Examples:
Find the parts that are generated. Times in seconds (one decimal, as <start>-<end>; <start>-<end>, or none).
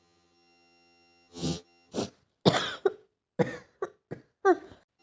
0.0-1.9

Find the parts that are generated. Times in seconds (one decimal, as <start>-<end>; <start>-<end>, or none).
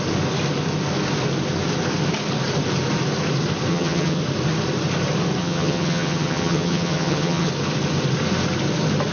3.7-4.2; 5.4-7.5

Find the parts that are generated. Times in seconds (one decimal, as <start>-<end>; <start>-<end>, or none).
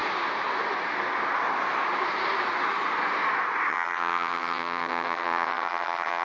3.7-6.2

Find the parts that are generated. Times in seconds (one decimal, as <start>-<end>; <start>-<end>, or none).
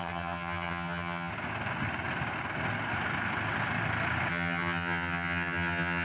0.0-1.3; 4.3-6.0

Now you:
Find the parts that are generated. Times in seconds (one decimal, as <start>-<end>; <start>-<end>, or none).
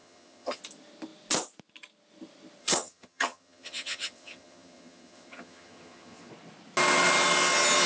0.0-0.6; 2.6-6.3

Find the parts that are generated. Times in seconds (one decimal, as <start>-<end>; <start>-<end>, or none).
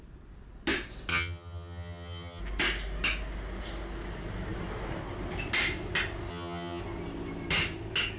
1.1-2.4; 6.3-6.8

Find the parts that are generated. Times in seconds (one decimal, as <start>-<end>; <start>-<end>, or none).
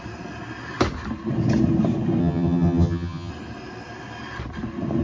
2.2-3.3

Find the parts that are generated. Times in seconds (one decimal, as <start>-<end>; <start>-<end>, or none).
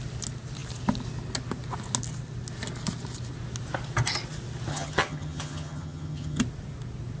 4.7-6.4